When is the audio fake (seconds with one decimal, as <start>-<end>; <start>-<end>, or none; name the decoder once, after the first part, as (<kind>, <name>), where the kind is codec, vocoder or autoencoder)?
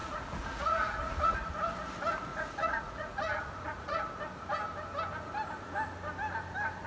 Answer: 0.0-1.5 (vocoder, Vocos); 2.3-4.1